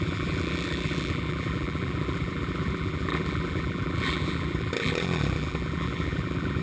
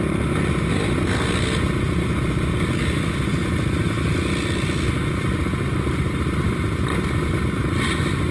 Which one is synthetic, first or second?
first